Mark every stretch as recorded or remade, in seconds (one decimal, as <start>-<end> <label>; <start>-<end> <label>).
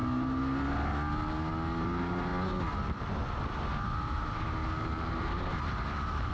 0.0-1.8 recorded; 1.8-2.3 remade; 2.3-4.0 recorded; 4.0-4.6 remade; 4.6-5.1 recorded; 5.1-6.3 remade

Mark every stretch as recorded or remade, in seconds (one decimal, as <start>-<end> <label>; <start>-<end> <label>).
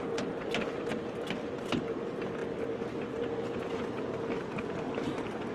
0.0-5.5 recorded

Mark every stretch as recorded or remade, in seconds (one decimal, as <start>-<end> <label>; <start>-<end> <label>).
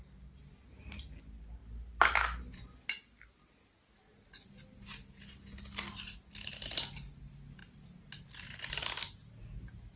0.0-10.0 recorded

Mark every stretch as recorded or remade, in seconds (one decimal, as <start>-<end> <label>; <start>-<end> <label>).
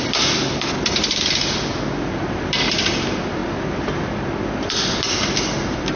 0.0-6.0 recorded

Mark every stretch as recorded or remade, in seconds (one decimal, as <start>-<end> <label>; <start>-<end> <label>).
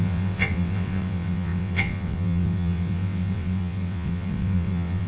0.0-5.1 remade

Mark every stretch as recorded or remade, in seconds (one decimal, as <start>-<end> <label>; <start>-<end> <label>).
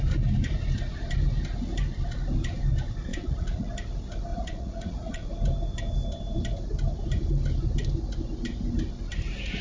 0.0-3.1 recorded; 3.1-3.7 remade; 3.7-4.3 recorded; 4.3-5.3 remade; 5.3-9.6 recorded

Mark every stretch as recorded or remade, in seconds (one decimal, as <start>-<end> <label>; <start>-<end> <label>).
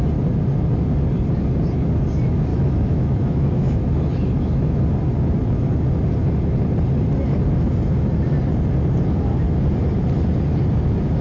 0.0-2.5 recorded; 2.5-4.8 remade; 4.8-11.2 recorded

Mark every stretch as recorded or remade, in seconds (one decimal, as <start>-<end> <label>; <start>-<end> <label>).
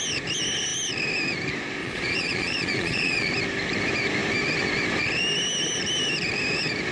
0.0-1.8 recorded; 1.8-3.3 remade; 3.3-6.9 recorded